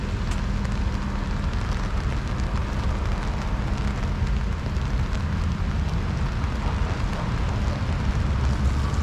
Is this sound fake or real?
real